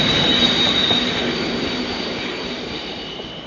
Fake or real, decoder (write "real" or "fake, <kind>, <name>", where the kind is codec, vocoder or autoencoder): fake, vocoder, BigVGAN v2